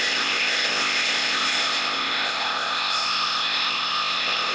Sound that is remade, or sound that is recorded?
remade